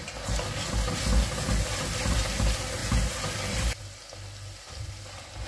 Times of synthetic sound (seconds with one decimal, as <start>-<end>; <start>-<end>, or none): none